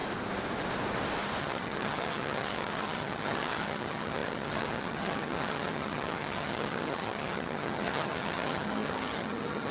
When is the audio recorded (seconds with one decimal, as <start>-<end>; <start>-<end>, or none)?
0.0-1.4